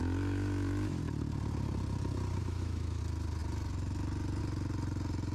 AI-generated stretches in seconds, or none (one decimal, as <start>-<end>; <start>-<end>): 0.0-1.0; 2.4-3.0